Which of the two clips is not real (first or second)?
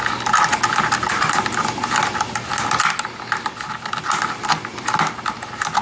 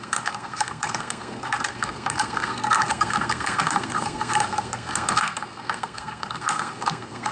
second